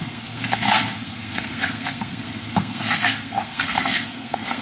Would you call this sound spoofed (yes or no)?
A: yes